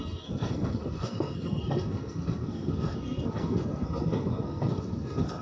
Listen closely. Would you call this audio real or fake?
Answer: fake